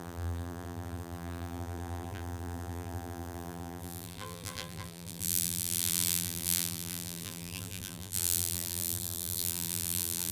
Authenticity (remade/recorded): remade